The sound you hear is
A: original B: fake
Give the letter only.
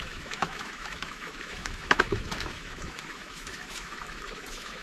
B